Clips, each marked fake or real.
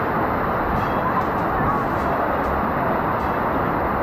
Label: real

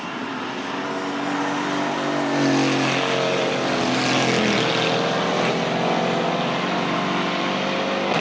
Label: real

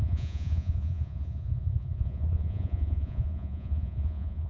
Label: fake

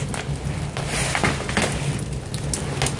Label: real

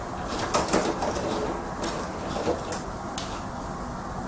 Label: real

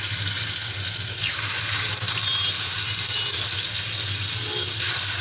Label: real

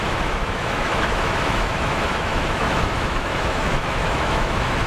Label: fake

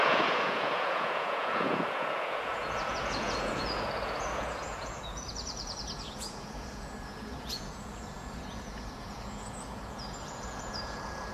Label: fake